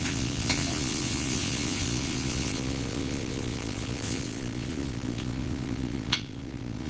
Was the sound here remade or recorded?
remade